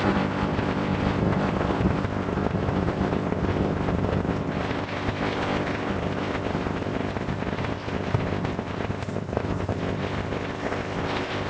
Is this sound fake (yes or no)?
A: yes